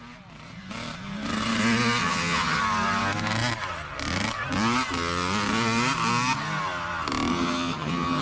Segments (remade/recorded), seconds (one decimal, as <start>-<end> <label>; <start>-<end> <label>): 0.0-2.0 recorded; 2.0-2.6 remade; 2.6-7.3 recorded; 7.3-8.2 remade